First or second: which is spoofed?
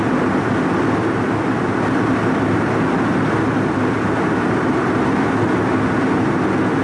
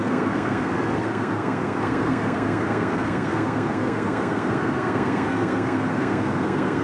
second